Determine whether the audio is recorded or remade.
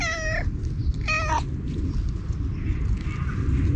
recorded